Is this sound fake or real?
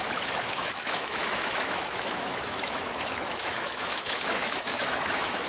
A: fake